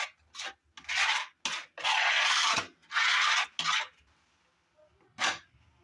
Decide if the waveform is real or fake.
real